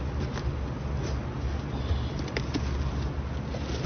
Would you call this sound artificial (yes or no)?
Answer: no